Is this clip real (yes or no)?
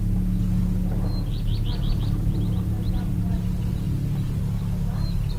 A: yes